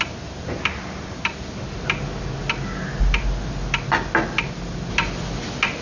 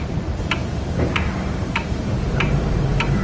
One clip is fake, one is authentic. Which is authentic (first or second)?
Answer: first